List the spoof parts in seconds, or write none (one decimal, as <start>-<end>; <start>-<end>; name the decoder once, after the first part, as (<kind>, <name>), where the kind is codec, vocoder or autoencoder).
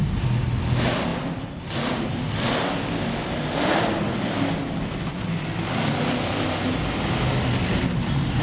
none